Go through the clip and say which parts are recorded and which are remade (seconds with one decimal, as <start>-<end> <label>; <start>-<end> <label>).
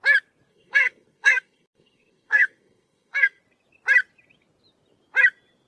0.0-0.5 recorded; 0.5-3.4 remade; 3.4-5.7 recorded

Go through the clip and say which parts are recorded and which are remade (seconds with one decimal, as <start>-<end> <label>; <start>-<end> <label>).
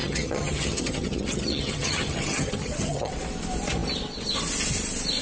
0.0-3.1 remade; 3.1-5.2 recorded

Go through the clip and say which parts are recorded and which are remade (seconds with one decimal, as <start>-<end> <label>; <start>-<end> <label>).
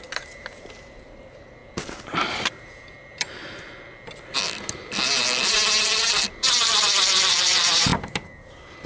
0.0-1.6 remade; 1.6-2.4 recorded; 2.4-3.4 remade; 3.4-6.1 recorded; 6.1-8.9 remade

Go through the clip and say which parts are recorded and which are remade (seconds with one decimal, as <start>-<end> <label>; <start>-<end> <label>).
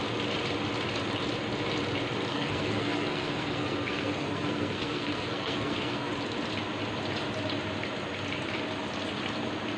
0.0-2.3 recorded; 2.3-6.1 remade; 6.1-9.8 recorded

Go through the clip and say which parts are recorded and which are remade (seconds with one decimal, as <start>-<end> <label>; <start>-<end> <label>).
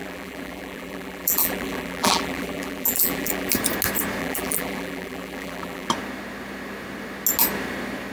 0.0-3.5 remade; 3.5-4.2 recorded; 4.2-5.9 remade; 5.9-8.1 recorded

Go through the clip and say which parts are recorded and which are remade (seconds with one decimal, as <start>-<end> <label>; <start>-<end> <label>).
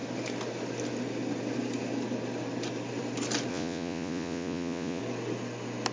0.0-3.5 recorded; 3.5-5.0 remade; 5.0-5.9 recorded